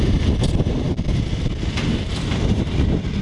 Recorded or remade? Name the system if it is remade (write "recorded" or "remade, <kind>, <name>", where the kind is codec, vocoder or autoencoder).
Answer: recorded